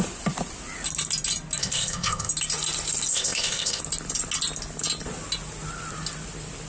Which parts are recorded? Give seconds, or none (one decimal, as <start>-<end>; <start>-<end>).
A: 0.0-1.6; 2.3-3.1; 3.8-6.7